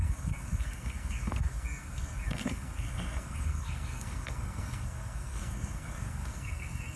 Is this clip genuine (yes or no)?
no